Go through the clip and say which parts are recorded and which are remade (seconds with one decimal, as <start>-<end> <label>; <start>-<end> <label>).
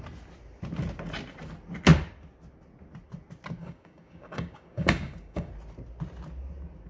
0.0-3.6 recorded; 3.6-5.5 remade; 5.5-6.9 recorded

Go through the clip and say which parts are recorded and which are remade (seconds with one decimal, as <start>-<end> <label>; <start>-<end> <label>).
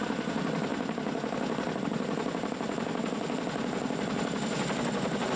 0.0-5.4 recorded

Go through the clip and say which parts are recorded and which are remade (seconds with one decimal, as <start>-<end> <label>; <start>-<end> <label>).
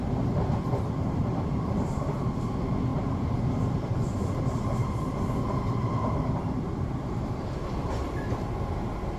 0.0-1.2 recorded; 1.2-2.4 remade; 2.4-2.9 recorded; 2.9-7.5 remade; 7.5-9.2 recorded